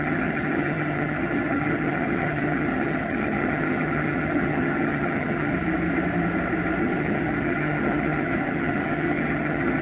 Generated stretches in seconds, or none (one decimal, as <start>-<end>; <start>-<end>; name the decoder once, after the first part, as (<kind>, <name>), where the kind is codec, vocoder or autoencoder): 0.0-5.5 (vocoder, HiFi-GAN); 6.8-9.8